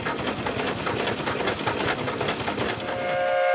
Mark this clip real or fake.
real